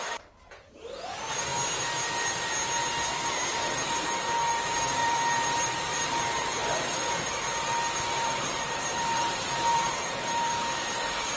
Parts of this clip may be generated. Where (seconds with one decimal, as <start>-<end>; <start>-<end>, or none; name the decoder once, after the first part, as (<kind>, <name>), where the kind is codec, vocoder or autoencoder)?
0.0-1.5 (vocoder, BigVGAN v2); 4.5-11.4